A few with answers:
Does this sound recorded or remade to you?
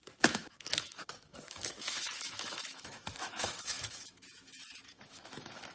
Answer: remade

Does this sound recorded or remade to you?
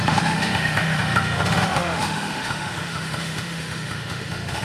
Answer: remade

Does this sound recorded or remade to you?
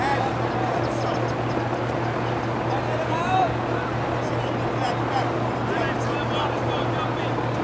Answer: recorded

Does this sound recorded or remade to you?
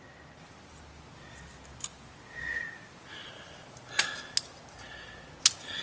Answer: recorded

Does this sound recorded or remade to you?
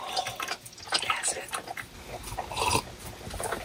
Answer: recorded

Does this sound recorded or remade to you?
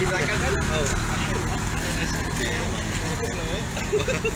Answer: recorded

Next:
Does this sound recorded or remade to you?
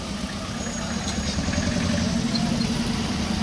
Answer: recorded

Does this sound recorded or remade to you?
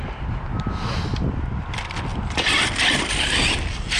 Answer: recorded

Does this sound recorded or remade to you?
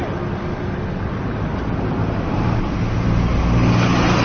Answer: recorded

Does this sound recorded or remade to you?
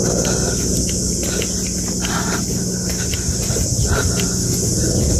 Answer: recorded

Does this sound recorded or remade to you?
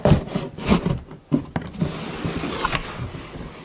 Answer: recorded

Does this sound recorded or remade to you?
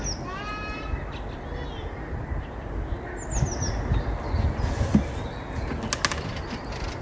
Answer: recorded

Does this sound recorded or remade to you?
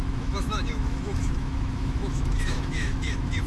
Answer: remade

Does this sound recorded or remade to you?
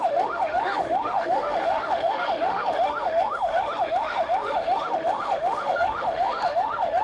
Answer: remade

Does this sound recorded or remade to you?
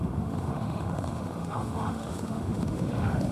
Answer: remade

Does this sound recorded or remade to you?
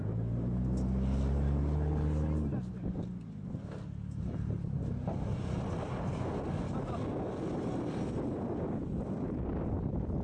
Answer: recorded